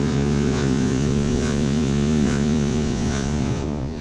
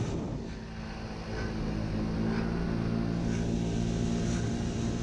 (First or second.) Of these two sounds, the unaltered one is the second